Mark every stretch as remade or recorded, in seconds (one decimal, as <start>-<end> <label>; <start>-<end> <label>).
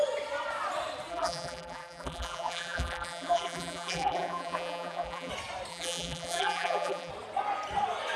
0.0-1.1 recorded; 1.1-5.3 remade; 5.3-5.7 recorded; 5.7-7.1 remade; 7.1-8.2 recorded